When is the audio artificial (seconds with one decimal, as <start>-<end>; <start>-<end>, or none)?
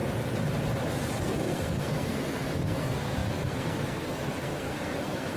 1.2-5.4